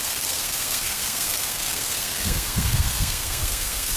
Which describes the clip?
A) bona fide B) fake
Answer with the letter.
B